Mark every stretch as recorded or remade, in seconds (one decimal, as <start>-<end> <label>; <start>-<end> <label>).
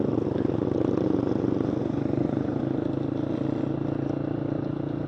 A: 0.0-1.8 recorded; 1.8-2.6 remade; 2.6-5.1 recorded